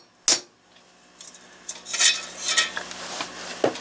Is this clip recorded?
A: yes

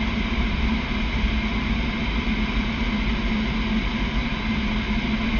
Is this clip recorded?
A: yes